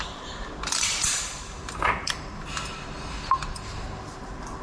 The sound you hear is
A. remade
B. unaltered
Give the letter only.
A